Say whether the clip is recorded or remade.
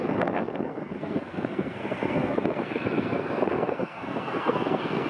remade